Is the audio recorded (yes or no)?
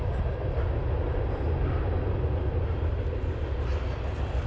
yes